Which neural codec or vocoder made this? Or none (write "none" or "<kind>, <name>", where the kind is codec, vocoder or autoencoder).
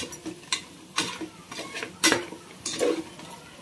none